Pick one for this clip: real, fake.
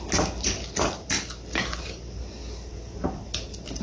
real